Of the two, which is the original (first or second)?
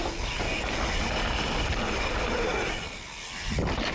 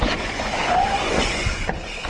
first